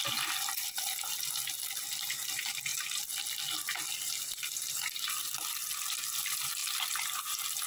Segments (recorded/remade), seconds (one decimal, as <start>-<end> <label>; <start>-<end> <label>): 0.0-7.7 recorded